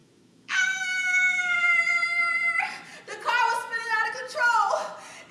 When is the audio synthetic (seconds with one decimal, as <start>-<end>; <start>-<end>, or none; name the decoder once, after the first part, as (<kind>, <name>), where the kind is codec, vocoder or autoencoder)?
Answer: 0.0-1.8 (autoencoder, DAC-VAE)

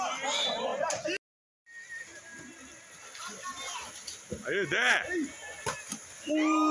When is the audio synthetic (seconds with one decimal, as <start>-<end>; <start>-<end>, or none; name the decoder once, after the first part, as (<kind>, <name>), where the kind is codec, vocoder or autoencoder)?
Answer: none

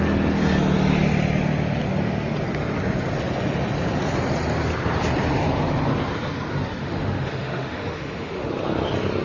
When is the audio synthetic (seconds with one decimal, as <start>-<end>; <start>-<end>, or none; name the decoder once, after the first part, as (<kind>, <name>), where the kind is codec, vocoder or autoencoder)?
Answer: 6.8-8.5 (autoencoder, DAC-VAE)

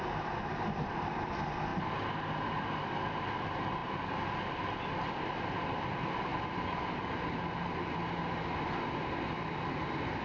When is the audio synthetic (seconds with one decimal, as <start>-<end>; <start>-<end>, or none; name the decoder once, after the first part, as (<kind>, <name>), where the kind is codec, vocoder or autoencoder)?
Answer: 6.3-7.6 (vocoder, BigVGAN v2)

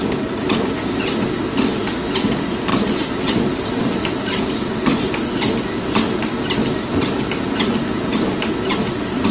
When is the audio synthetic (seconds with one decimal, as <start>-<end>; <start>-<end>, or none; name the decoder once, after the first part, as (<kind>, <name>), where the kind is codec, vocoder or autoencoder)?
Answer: none